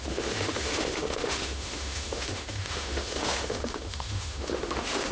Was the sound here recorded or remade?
remade